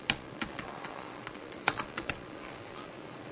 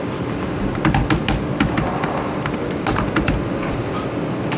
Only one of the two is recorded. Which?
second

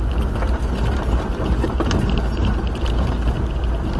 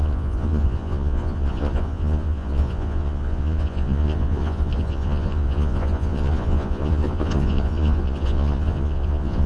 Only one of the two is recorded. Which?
first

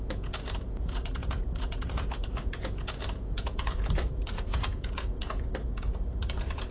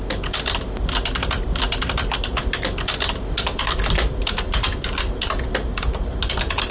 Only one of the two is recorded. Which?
second